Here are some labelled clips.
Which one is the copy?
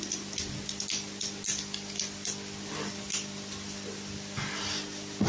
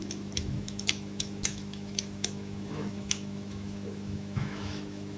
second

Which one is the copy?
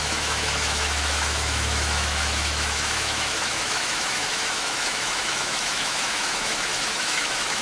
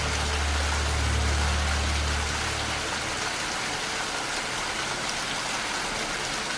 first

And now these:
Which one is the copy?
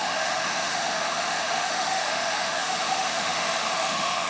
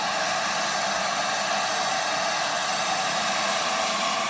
first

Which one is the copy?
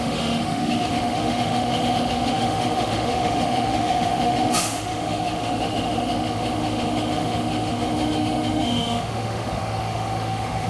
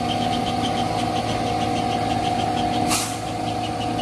first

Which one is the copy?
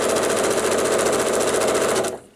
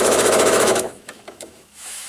second